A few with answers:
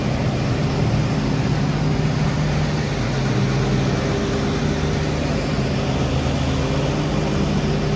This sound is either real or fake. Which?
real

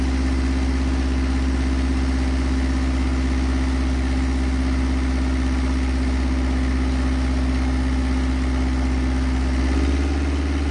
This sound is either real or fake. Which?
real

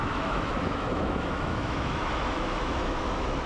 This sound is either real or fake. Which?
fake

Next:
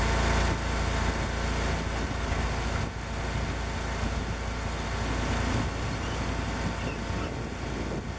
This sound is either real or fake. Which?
real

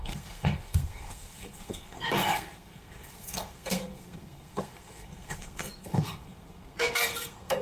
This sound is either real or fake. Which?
fake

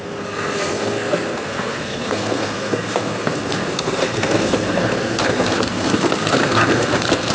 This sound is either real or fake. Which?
fake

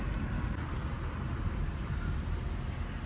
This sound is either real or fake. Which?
real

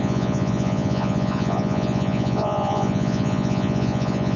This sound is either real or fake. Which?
fake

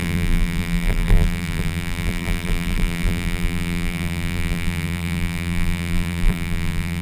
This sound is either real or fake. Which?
fake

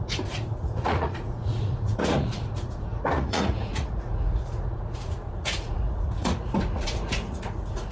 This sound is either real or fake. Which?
fake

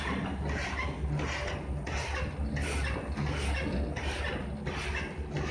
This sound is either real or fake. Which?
real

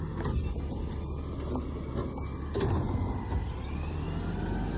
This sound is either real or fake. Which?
real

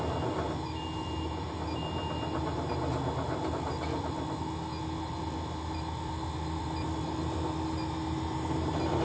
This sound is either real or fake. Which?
real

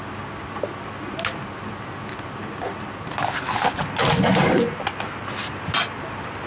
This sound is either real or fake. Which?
real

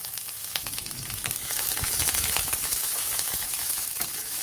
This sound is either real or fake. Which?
fake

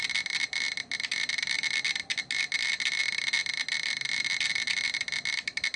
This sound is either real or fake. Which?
real